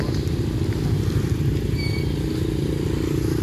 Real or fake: real